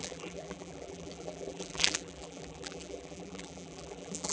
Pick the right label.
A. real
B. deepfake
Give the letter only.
B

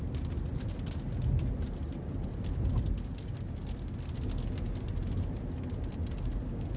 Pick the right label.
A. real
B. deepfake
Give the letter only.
A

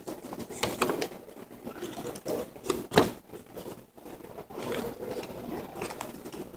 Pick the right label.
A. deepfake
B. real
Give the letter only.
B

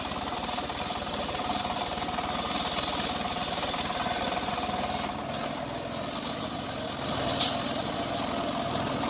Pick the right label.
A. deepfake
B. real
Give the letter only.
B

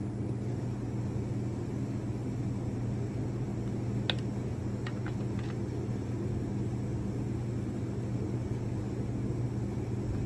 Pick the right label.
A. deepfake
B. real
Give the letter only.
B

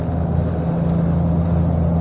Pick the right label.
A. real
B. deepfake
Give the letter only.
A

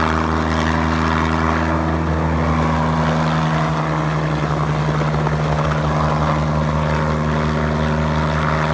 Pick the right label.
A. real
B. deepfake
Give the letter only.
A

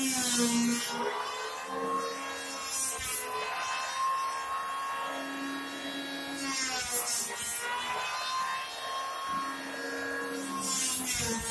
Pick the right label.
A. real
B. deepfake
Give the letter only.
A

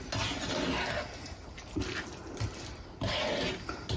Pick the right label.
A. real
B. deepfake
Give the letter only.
A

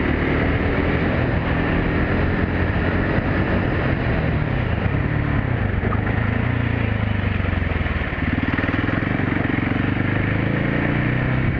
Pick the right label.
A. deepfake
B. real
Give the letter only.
B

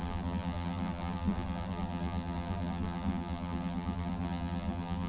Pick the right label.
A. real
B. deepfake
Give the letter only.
B